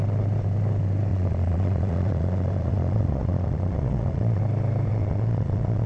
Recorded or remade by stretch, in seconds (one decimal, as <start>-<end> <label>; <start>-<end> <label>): 0.0-1.1 recorded; 1.1-4.4 remade; 4.4-4.9 recorded; 4.9-5.9 remade